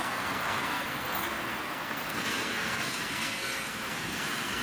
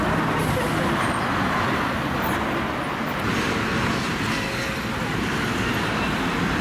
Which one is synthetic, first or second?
first